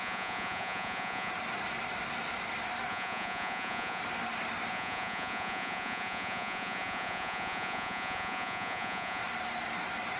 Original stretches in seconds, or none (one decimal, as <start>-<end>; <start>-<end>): 1.3-2.9; 4.0-4.7; 9.2-10.2